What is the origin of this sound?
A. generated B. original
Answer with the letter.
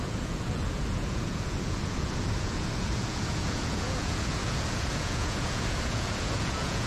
A